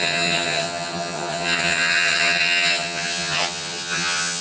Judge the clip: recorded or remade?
remade